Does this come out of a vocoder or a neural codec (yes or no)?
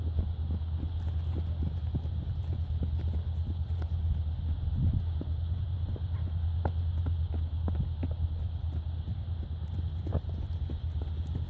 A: no